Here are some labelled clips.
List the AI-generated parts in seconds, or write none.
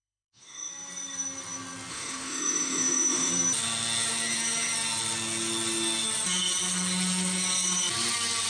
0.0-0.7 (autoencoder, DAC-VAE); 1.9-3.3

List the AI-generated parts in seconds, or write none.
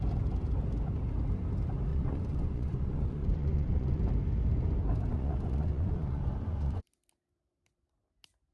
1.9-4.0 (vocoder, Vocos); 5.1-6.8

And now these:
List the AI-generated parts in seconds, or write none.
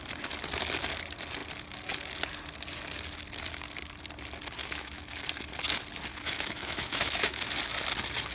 4.6-5.2 (autoencoder, DAC-VAE); 6.1-7.5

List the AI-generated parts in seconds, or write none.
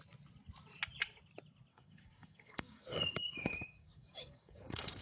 1.7-5.0 (codec, DAC)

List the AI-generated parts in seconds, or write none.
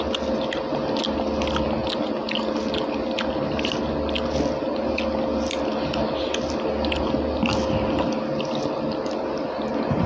none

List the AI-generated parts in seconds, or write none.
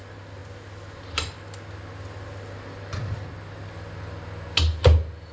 none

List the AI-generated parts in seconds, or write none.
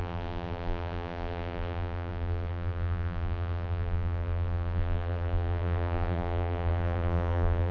0.0-7.7 (vocoder, BigVGAN v2)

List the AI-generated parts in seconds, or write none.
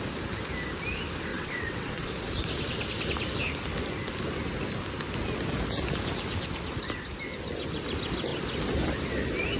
1.3-2.1 (vocoder, WaveNeXt)